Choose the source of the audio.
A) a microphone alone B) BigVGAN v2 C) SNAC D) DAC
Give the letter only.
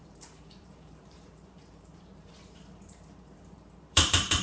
B